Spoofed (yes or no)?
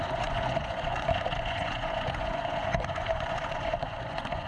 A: yes